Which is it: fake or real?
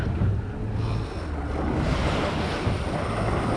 real